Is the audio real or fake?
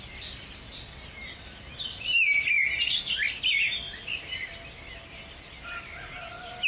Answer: real